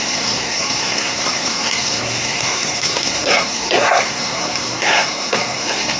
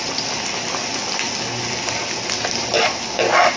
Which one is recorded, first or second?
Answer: second